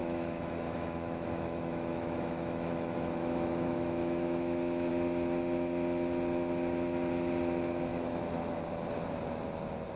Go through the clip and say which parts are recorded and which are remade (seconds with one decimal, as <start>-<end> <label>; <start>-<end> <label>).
0.0-4.9 remade; 4.9-7.9 recorded; 7.9-8.6 remade; 8.6-10.0 recorded